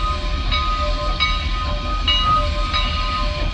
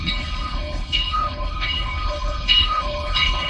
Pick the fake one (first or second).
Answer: second